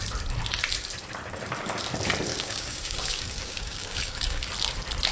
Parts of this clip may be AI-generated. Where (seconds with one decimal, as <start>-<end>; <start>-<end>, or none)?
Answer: 2.3-4.5